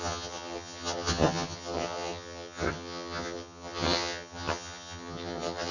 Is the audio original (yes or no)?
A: no